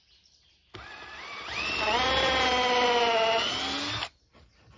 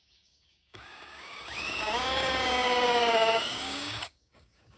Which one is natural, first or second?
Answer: first